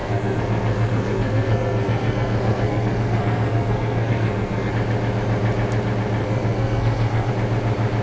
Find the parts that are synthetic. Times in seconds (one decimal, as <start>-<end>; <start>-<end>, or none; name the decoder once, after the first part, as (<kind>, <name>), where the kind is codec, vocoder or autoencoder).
0.0-4.7 (codec, SNAC); 6.2-7.3